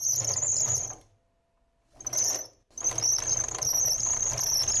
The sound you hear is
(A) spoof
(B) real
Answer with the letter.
B